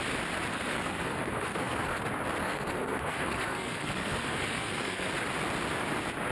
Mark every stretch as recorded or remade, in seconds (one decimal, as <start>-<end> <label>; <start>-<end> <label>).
0.0-0.5 recorded; 0.5-2.0 remade; 2.0-2.4 recorded; 2.4-5.1 remade; 5.1-6.3 recorded